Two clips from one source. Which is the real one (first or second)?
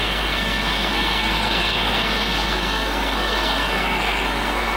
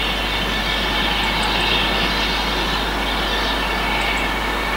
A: second